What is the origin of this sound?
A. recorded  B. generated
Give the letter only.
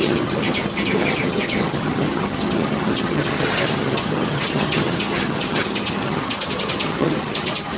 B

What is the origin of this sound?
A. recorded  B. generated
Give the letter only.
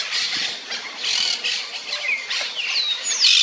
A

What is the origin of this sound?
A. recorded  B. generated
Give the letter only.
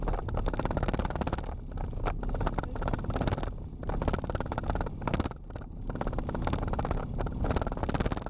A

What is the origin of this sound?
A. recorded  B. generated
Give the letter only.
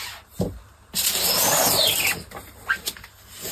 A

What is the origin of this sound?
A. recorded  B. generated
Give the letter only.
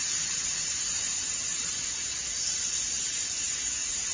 A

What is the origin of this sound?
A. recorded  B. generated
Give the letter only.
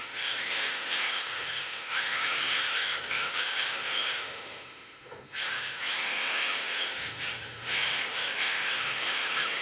B